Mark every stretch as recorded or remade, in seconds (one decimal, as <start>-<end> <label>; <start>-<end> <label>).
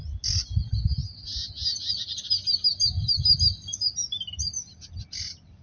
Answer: 0.0-5.6 recorded